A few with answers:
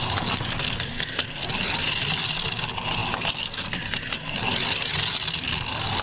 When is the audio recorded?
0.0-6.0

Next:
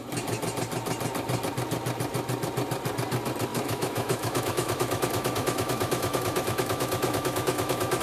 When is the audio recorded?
0.0-3.5

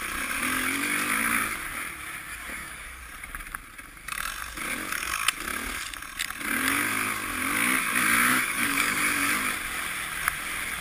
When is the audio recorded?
0.0-2.3; 3.0-8.3; 9.0-10.8

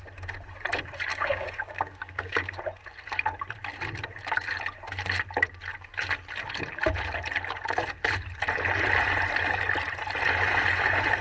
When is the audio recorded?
0.0-1.1; 2.6-11.2

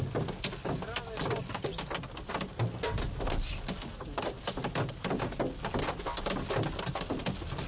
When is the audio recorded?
0.0-7.7

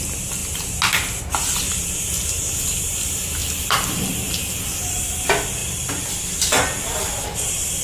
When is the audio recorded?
0.0-3.4; 4.1-5.6; 7.1-7.8

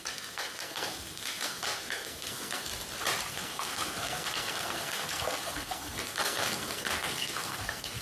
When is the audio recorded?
2.7-3.3

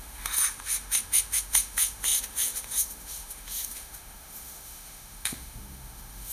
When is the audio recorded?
none